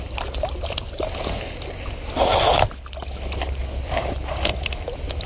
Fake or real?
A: real